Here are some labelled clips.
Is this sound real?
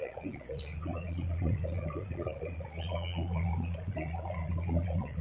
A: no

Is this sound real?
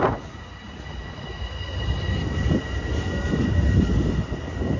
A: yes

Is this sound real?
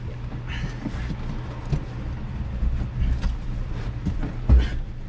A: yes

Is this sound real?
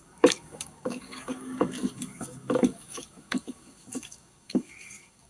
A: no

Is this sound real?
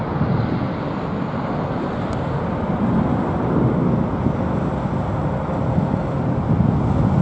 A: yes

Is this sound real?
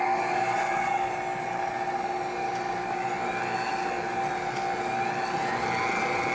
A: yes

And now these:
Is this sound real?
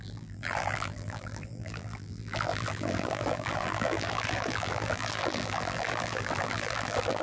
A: no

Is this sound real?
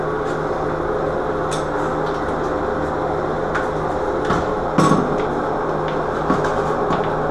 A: yes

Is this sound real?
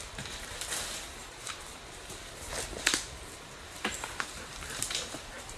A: no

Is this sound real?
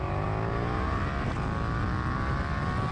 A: yes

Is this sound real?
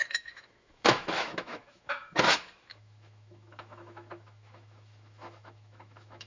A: no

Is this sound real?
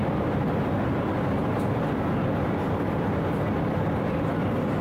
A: yes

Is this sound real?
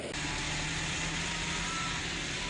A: yes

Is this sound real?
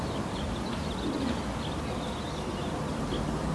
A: yes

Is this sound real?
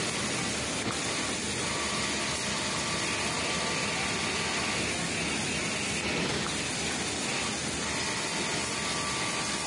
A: yes